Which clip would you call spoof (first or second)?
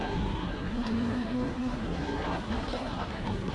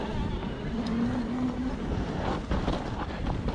first